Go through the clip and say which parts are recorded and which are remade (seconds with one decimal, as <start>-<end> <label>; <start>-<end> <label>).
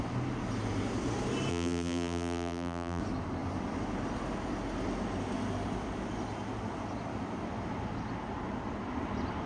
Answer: 0.0-1.5 recorded; 1.5-3.0 remade; 3.0-9.5 recorded